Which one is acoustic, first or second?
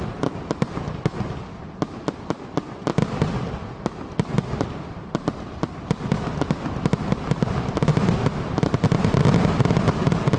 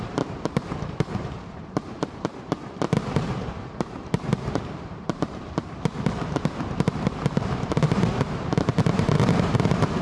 first